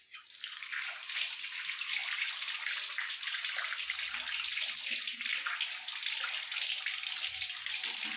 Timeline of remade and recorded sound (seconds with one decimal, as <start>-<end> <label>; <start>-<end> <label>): 0.0-8.2 recorded